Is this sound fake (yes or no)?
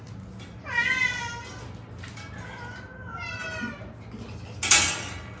no